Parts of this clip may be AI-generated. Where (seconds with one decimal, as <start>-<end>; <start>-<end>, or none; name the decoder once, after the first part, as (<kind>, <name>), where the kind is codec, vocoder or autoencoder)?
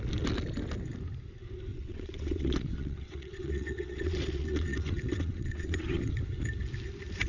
1.7-6.1 (vocoder, WaveNeXt)